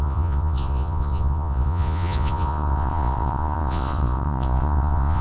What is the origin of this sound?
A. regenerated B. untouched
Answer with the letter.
A